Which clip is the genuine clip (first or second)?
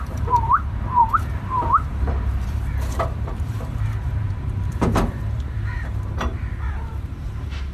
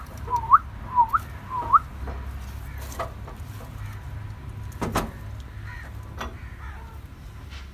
second